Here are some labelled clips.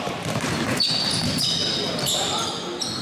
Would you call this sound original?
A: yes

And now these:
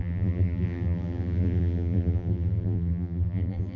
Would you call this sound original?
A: no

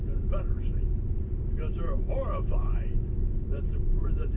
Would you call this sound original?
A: no